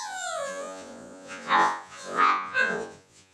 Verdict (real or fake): fake